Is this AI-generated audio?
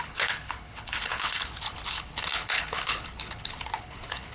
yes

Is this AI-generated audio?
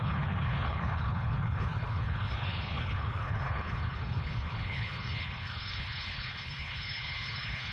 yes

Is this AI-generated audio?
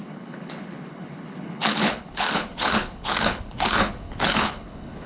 yes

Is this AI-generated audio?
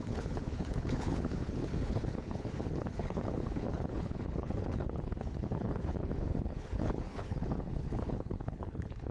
yes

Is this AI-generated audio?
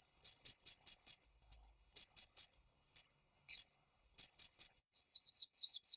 yes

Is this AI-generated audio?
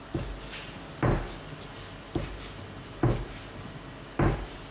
no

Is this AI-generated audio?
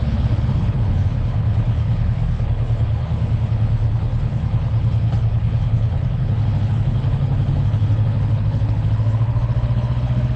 yes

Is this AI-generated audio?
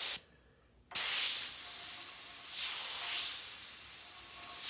no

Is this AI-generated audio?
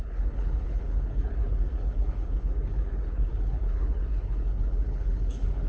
yes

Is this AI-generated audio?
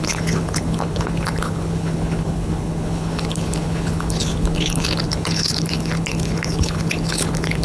yes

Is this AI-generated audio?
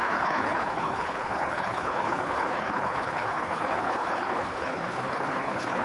yes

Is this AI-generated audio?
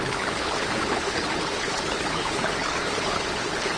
yes